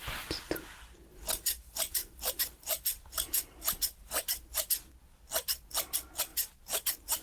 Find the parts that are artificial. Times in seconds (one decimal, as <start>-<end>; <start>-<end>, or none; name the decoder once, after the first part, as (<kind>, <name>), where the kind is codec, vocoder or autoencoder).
1.1-4.7 (vocoder, BigVGAN v2); 6.3-7.2